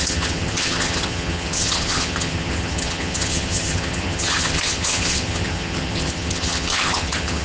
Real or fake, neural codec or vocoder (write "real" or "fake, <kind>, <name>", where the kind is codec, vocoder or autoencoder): fake, vocoder, HiFi-GAN